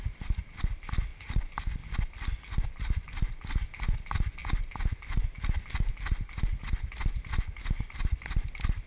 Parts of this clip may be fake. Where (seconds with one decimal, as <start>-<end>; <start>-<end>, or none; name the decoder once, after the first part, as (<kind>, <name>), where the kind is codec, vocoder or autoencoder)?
none